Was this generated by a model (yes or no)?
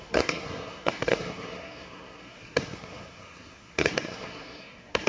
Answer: yes